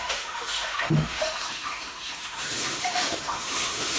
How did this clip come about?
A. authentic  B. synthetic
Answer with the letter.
B